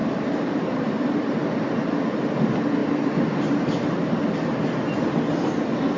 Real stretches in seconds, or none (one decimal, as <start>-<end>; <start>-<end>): 1.4-2.8; 4.2-6.0